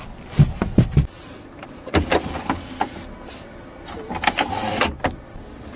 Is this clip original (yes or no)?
yes